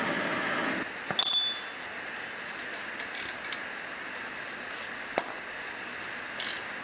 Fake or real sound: real